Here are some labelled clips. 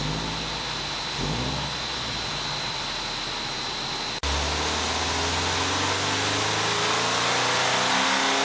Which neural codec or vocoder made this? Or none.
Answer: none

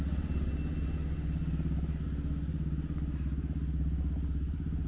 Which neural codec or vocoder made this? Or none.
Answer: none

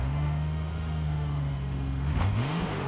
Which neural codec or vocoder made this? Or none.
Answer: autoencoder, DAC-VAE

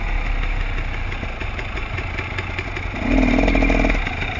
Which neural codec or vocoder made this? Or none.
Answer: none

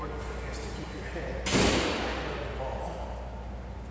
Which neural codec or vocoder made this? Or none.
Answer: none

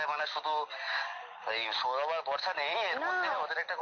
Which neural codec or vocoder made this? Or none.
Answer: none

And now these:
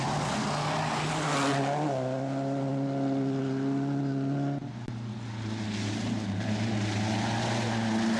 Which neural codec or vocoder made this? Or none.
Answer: none